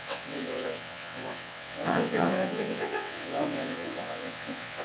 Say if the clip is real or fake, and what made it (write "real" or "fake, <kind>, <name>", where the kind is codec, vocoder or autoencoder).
fake, vocoder, WaveNeXt